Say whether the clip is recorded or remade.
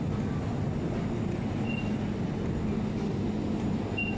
recorded